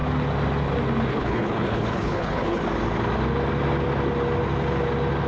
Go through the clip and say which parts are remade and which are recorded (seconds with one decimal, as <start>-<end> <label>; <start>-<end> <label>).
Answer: 0.0-1.1 recorded; 1.1-2.6 remade; 2.6-5.3 recorded